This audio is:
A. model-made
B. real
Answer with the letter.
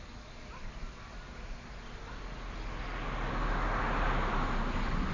B